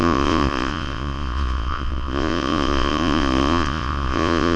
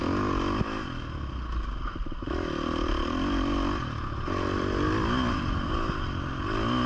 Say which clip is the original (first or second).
second